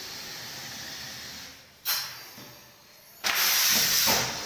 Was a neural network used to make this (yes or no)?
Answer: no